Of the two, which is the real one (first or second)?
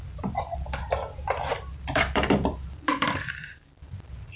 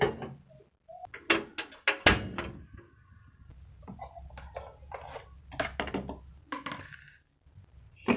second